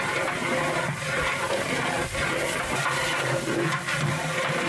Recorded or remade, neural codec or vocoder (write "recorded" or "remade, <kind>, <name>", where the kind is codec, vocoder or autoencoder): recorded